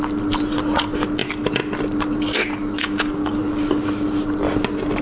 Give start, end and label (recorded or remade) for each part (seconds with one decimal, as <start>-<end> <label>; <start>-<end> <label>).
0.0-2.8 recorded; 2.8-3.4 remade; 3.4-5.0 recorded